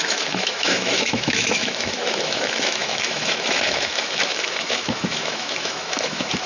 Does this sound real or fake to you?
fake